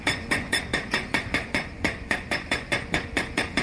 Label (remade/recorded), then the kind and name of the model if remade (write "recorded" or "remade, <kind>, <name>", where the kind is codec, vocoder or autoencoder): remade, vocoder, Vocos